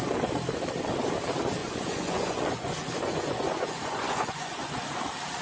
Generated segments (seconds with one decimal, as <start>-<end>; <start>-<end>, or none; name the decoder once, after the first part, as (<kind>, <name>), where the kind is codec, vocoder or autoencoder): 1.6-4.8 (vocoder, Vocos)